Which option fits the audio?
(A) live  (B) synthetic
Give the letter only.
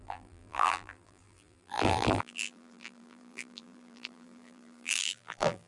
B